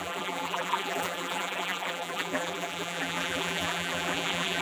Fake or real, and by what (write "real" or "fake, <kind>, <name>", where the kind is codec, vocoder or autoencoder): fake, vocoder, BigVGAN v2